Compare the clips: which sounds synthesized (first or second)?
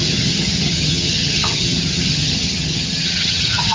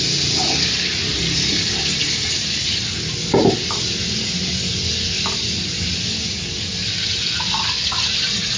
first